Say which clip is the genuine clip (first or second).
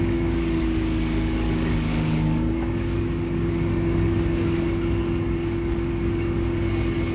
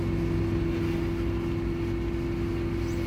second